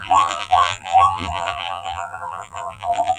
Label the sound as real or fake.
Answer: fake